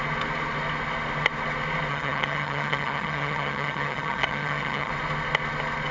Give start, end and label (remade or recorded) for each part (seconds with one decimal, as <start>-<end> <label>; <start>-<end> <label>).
0.0-1.9 recorded; 1.9-4.9 remade; 4.9-5.9 recorded